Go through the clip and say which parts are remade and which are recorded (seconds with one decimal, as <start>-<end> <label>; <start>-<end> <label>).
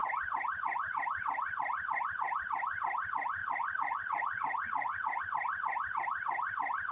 0.0-3.4 recorded; 3.4-5.2 remade; 5.2-6.9 recorded